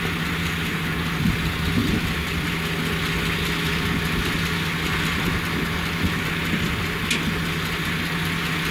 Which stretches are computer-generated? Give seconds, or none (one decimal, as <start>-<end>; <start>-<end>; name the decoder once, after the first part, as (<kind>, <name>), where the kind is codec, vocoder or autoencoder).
1.8-2.5 (vocoder, BigVGAN v2)